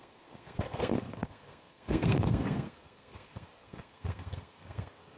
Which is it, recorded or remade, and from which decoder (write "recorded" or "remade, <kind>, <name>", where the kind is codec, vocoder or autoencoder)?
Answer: remade, codec, SNAC